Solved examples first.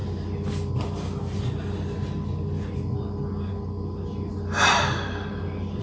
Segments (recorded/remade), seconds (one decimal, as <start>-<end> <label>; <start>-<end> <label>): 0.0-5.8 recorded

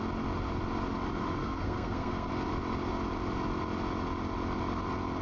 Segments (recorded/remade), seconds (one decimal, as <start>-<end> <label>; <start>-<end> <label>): 0.0-1.4 recorded; 1.4-2.3 remade; 2.3-5.2 recorded

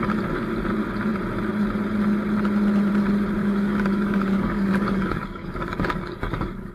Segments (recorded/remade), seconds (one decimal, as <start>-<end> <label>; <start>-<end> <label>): 0.0-3.4 recorded; 3.4-6.7 remade